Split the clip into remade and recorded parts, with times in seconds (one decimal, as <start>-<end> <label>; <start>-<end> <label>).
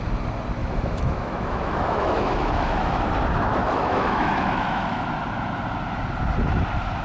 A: 0.0-0.6 recorded; 0.6-3.1 remade; 3.1-3.6 recorded; 3.6-5.1 remade; 5.1-7.0 recorded